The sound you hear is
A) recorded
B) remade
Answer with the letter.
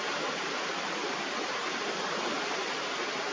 A